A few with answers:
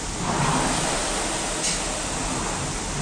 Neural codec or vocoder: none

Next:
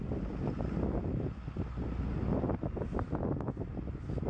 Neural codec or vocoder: none